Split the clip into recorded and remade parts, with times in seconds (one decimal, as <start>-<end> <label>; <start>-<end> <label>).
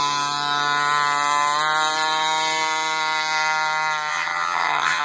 0.0-4.1 recorded; 4.1-5.0 remade